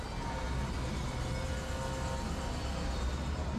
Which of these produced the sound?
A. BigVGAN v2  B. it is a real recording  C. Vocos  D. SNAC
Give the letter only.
B